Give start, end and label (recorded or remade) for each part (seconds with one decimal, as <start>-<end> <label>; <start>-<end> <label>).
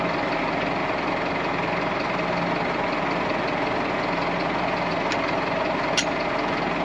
0.0-6.8 recorded